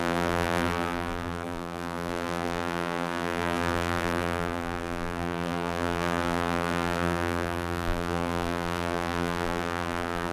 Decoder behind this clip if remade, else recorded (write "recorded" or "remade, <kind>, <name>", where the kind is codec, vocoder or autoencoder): remade, vocoder, BigVGAN v2